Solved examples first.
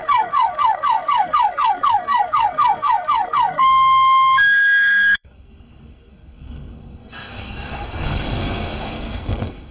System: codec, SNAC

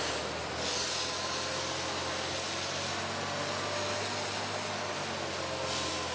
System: none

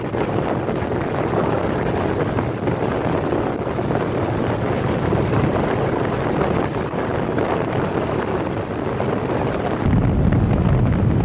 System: none